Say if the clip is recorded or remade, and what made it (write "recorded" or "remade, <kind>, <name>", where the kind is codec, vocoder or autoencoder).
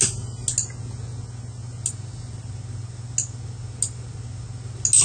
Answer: recorded